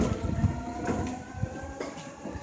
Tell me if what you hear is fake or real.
real